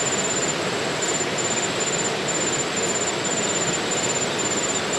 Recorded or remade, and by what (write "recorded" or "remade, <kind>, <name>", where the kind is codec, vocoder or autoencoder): recorded